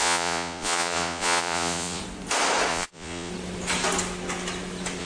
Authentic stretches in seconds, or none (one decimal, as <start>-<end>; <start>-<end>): 2.0-2.7; 3.3-5.0